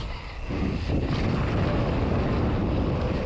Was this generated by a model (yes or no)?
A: no